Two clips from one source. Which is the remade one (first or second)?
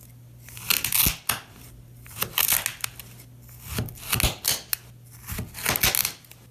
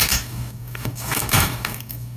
second